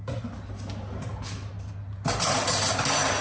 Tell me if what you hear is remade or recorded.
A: recorded